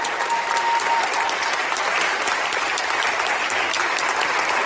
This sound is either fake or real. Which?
real